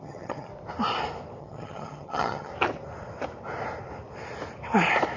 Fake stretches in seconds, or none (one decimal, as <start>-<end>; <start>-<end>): 0.0-0.5; 1.4-2.5